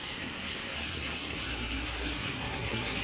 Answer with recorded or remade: remade